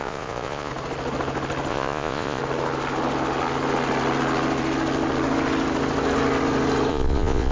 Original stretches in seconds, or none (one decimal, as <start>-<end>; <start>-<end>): 0.7-1.7; 2.4-6.9